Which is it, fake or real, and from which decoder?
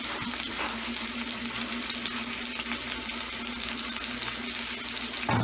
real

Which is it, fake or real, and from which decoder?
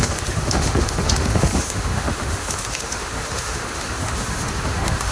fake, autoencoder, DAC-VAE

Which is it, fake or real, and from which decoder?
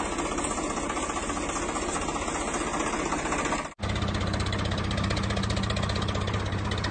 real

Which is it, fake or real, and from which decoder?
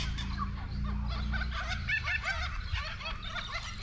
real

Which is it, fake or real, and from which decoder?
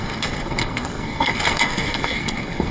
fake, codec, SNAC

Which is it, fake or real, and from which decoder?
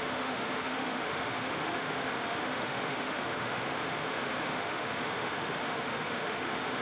fake, autoencoder, DAC-VAE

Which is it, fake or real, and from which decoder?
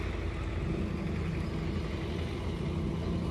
real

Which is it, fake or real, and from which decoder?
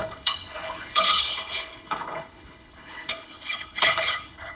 fake, codec, HILCodec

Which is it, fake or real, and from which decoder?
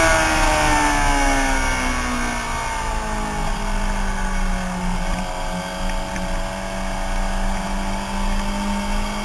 real